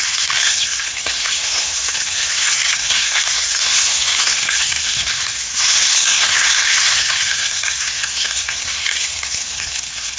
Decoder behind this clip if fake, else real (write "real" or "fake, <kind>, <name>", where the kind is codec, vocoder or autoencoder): fake, codec, SNAC